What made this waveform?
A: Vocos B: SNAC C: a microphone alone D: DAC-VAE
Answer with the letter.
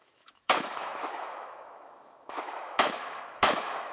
D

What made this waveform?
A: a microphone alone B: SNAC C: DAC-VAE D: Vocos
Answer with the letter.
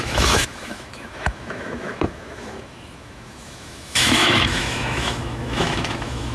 C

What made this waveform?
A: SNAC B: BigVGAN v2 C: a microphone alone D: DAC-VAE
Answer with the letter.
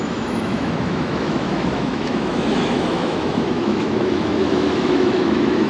D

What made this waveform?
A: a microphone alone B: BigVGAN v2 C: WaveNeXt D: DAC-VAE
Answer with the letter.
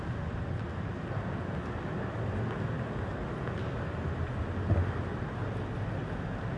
A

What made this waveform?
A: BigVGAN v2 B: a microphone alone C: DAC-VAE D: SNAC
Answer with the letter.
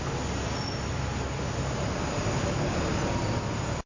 B